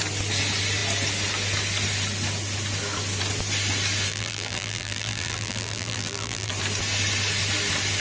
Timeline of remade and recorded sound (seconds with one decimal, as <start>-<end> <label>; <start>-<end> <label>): 0.0-4.1 recorded; 4.1-6.5 remade; 6.5-8.0 recorded